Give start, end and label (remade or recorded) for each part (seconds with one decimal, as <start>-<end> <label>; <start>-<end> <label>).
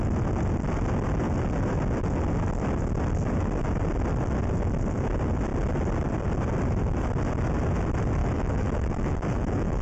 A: 0.0-8.2 recorded; 8.2-9.8 remade